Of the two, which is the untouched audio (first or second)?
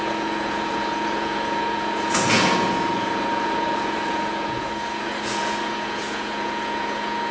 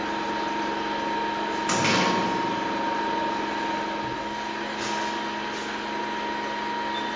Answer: second